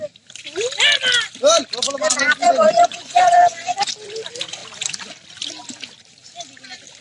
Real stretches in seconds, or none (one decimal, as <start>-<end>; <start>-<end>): 0.0-2.4; 3.8-7.0